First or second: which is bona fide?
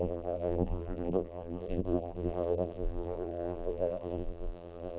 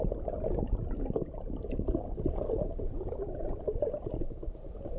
second